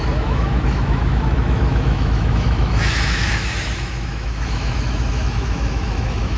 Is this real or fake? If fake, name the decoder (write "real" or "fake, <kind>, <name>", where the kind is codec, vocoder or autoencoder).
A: fake, autoencoder, DAC-VAE